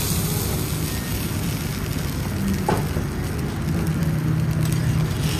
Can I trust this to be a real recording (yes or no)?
yes